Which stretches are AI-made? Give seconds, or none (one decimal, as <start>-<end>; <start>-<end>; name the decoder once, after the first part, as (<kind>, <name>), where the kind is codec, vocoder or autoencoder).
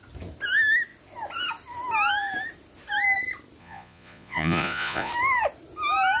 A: 3.6-5.1 (vocoder, Vocos)